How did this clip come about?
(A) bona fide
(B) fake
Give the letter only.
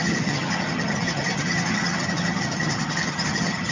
B